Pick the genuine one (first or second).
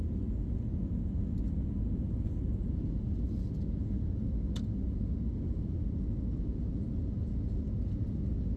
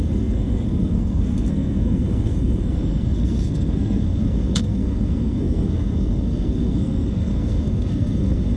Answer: first